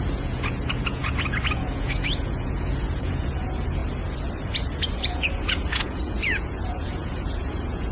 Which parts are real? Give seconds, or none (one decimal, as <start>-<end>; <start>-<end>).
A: 3.8-4.4